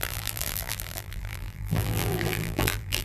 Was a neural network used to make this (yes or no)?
yes